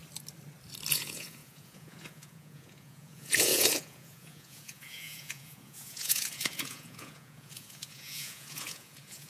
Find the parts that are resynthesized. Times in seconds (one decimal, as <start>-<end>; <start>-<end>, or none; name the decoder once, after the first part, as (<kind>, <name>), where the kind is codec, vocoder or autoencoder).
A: 0.9-9.3 (vocoder, Vocos)